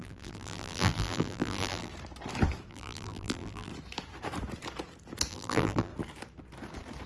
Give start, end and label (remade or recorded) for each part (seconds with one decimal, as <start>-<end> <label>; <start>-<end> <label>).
0.0-1.9 remade; 1.9-2.7 recorded; 2.7-3.7 remade; 3.7-5.3 recorded; 5.3-5.9 remade; 5.9-7.1 recorded